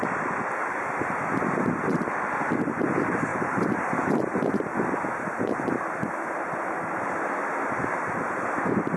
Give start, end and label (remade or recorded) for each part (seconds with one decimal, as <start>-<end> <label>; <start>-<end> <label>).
0.0-3.3 recorded; 3.3-4.0 remade; 4.0-9.0 recorded